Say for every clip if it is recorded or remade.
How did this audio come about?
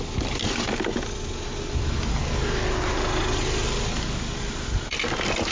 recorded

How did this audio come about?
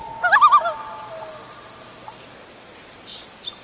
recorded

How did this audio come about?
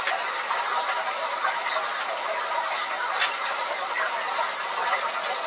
recorded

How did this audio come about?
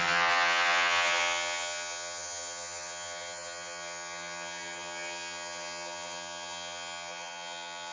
remade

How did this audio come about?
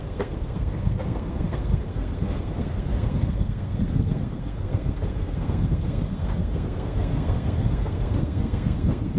remade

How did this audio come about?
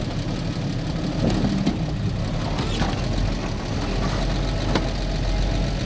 recorded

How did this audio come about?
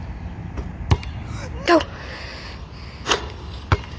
recorded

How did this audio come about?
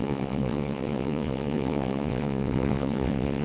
remade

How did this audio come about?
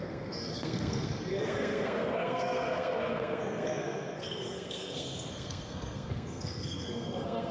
remade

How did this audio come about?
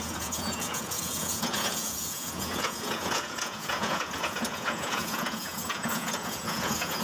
remade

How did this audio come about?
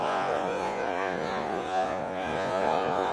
remade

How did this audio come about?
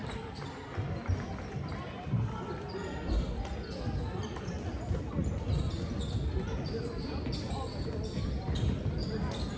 recorded